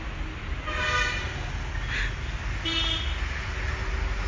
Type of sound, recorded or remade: recorded